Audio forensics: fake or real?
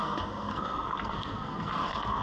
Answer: fake